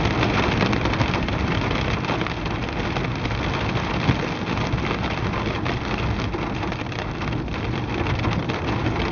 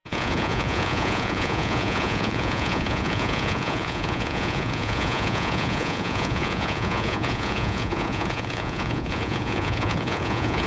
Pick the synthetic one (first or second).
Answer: second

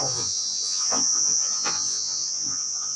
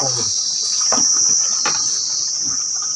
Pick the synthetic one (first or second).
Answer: first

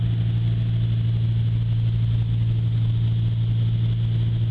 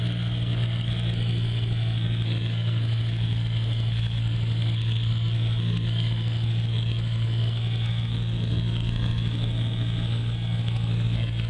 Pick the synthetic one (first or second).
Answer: second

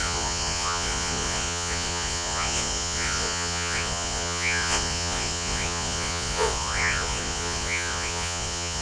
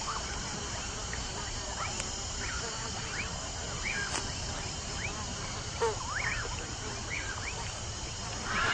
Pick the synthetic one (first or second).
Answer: first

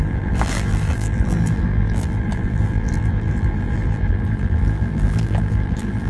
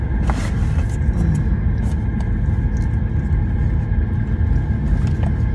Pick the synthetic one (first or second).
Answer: first